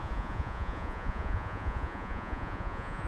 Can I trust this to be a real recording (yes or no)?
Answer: no